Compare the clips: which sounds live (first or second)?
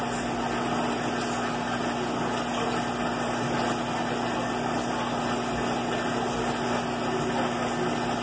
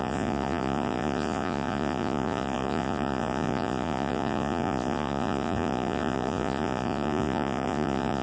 first